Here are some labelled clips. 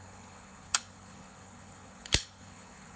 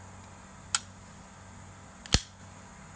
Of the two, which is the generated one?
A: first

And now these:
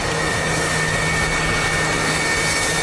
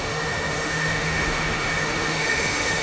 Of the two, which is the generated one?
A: second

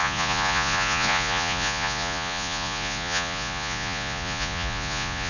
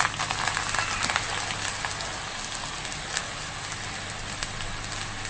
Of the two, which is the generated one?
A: first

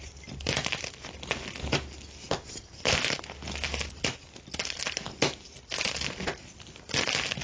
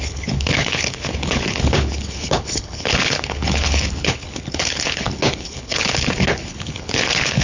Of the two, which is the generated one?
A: second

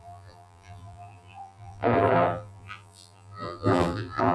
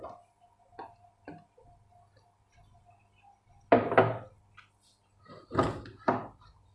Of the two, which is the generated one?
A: first